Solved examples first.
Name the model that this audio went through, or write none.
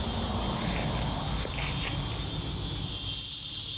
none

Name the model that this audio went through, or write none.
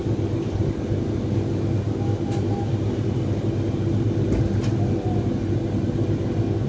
none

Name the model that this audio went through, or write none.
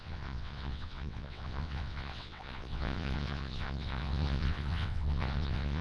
vocoder, WaveNeXt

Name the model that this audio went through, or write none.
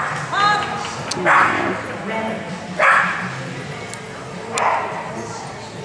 none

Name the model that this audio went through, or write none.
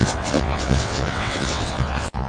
vocoder, WaveNeXt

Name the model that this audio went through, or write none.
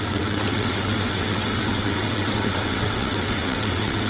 vocoder, WaveNeXt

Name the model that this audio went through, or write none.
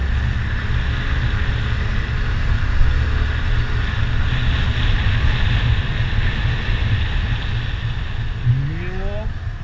none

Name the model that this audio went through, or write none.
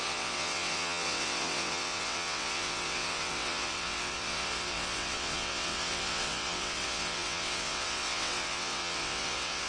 vocoder, WaveNeXt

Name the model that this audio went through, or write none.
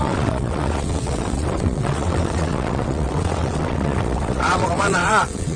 vocoder, WaveNeXt